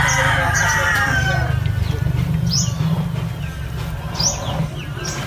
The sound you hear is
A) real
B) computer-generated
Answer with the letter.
B